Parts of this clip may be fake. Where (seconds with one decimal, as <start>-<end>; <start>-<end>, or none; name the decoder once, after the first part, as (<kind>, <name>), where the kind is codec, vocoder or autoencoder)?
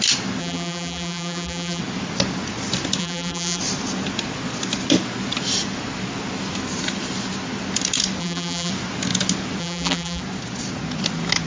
0.4-1.8 (vocoder, BigVGAN v2); 3.0-3.6; 8.2-8.7; 9.6-10.2